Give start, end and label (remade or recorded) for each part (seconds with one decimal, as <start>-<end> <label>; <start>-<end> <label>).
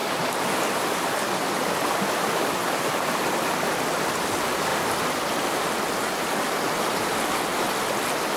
0.0-4.1 remade; 4.1-4.7 recorded; 4.7-5.9 remade; 5.9-8.4 recorded